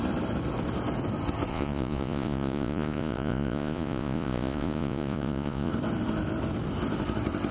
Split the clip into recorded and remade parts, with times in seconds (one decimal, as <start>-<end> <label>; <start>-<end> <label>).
0.0-1.5 recorded; 1.5-5.7 remade; 5.7-7.5 recorded